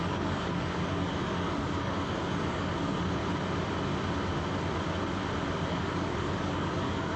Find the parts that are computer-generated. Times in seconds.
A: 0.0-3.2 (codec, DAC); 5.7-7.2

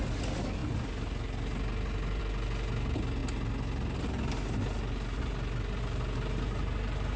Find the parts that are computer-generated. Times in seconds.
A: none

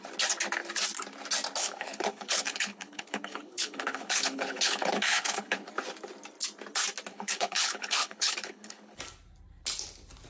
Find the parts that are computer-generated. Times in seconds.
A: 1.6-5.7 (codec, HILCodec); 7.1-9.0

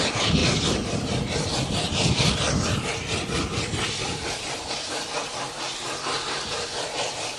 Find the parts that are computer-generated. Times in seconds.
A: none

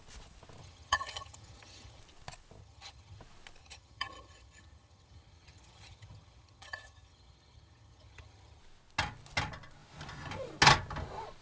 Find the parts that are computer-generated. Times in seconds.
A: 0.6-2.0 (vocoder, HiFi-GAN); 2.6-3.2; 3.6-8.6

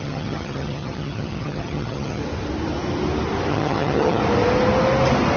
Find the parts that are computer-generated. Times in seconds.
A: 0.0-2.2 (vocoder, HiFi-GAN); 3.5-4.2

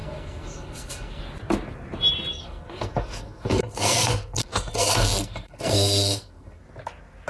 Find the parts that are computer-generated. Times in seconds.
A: 0.0-1.2 (codec, SNAC); 2.3-6.6

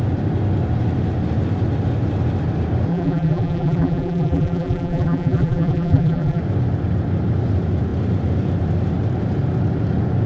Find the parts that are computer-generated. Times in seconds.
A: 2.9-6.4 (vocoder, BigVGAN v2)